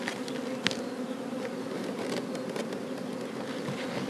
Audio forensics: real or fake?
real